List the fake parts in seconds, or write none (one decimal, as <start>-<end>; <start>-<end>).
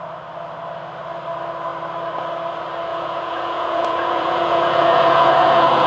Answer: 2.9-5.9